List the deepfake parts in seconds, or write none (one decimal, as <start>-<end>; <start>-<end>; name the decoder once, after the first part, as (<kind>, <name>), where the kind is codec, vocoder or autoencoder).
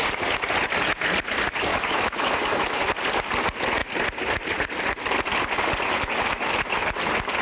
1.7-2.8 (autoencoder, DAC-VAE)